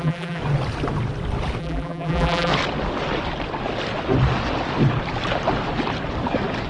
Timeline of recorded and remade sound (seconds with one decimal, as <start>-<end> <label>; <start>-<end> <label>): 0.0-0.4 remade; 0.4-1.6 recorded; 1.6-2.5 remade; 2.5-6.7 recorded